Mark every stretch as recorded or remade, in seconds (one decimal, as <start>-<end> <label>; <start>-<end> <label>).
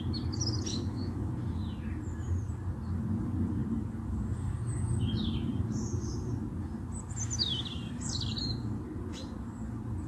0.0-0.7 recorded; 0.7-1.3 remade; 1.3-10.1 recorded